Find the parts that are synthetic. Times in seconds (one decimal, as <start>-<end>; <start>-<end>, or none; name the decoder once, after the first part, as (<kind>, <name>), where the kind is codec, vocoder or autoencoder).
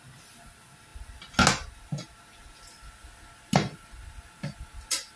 none